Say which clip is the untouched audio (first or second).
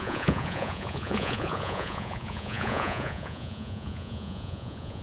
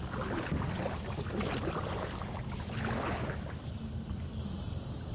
second